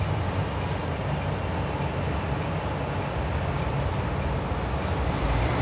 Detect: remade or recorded recorded